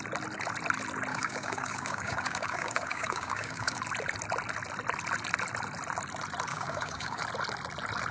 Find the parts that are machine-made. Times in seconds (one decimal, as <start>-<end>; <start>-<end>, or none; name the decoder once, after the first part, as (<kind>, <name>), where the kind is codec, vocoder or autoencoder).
1.1-3.8 (codec, DAC); 6.5-7.2